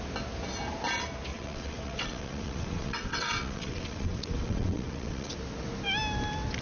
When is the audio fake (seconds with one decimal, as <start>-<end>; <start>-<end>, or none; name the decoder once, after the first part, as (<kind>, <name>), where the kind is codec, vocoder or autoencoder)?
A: 1.3-5.3 (vocoder, WaveNeXt)